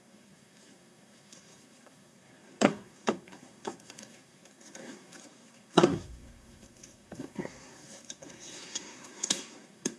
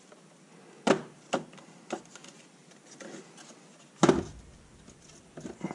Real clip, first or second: second